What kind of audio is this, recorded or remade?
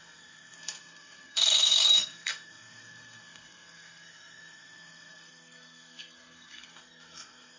remade